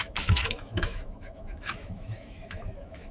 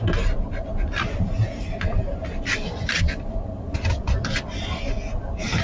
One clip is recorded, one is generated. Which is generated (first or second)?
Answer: first